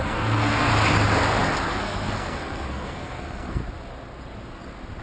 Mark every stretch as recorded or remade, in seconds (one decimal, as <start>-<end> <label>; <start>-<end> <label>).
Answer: 0.0-0.7 remade; 0.7-1.7 recorded; 1.7-3.6 remade; 3.6-5.0 recorded